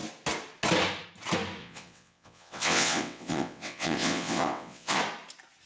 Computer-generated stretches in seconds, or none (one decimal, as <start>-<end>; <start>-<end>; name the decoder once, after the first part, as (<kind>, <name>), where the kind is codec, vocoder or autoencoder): 1.6-5.0 (vocoder, WaveNeXt)